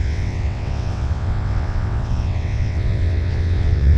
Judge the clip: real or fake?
fake